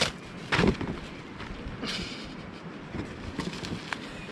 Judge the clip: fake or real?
real